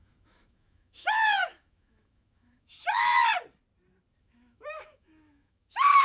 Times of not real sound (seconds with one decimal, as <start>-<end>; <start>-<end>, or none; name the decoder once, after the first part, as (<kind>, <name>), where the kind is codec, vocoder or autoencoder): 0.0-3.3 (autoencoder, DAC-VAE); 4.2-6.0